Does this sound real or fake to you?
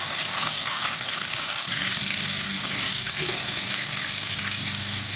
fake